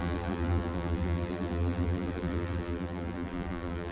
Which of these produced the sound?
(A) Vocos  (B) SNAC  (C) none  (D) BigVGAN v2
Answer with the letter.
D